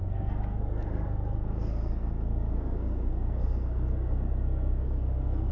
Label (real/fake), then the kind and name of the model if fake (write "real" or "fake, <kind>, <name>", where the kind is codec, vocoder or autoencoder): fake, codec, SNAC